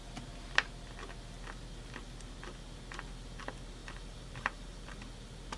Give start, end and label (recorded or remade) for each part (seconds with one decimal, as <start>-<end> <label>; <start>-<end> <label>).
0.0-3.8 recorded; 3.8-5.1 remade; 5.1-5.6 recorded

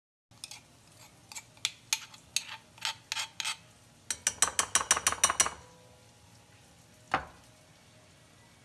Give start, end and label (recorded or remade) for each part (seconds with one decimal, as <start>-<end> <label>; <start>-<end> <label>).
0.0-8.6 recorded

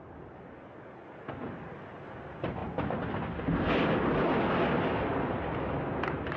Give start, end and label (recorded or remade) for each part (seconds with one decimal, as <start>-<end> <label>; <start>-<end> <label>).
0.0-6.4 recorded

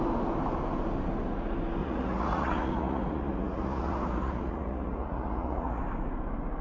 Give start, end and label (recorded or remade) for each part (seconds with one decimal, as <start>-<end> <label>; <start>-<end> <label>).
0.0-1.8 recorded; 1.8-5.8 remade; 5.8-6.6 recorded

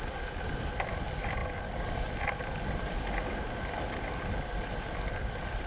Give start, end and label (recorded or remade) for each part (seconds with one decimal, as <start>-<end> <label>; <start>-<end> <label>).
0.0-5.7 recorded